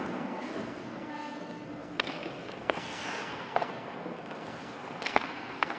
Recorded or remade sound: remade